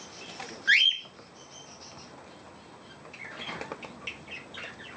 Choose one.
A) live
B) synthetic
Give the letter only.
A